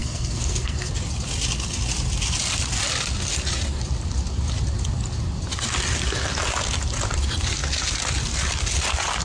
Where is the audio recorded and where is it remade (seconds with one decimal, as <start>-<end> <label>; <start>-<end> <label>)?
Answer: 0.0-0.9 remade; 0.9-9.2 recorded